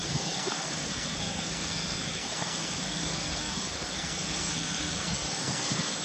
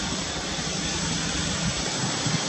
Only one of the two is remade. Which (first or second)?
first